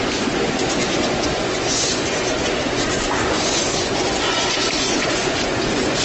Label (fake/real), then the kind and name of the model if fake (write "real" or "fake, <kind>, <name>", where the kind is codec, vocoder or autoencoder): fake, vocoder, Vocos